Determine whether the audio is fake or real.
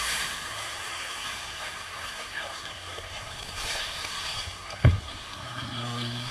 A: fake